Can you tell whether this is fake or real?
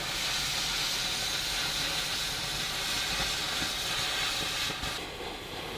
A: real